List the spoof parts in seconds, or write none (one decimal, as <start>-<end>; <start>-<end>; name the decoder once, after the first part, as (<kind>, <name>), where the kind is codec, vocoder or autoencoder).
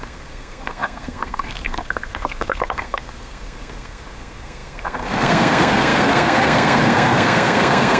0.0-8.0 (codec, SNAC)